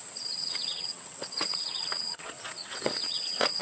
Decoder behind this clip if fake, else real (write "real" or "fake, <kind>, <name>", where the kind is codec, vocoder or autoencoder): fake, vocoder, WaveNeXt